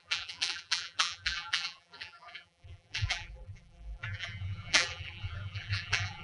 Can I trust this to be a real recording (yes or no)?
no